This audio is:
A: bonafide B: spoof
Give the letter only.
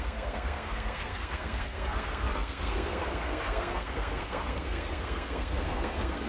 B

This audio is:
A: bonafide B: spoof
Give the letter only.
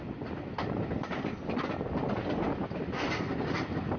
A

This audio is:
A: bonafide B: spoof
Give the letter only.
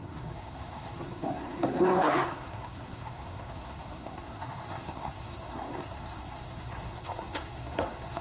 B